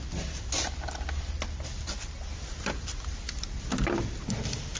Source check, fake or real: real